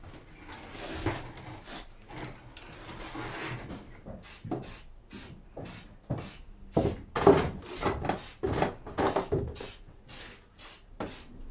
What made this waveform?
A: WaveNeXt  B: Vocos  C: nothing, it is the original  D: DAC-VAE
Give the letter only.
C